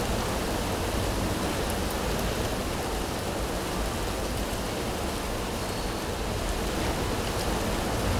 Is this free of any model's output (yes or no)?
yes